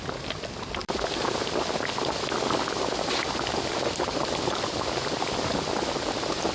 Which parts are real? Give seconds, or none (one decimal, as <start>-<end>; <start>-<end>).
0.0-0.8; 4.3-6.5